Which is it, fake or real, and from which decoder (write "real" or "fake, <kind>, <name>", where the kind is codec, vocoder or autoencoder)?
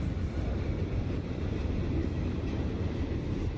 fake, vocoder, BigVGAN v2